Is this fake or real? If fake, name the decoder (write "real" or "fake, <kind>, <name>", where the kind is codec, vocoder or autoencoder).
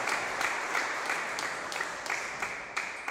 fake, vocoder, BigVGAN v2